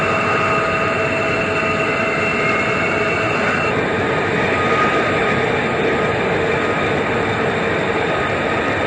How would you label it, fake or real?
real